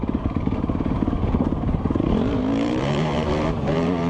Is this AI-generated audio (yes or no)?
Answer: yes